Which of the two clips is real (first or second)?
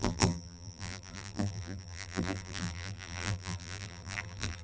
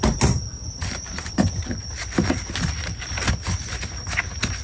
second